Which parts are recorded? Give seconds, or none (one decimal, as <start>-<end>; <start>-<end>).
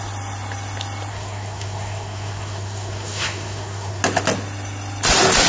0.0-1.1; 4.0-5.5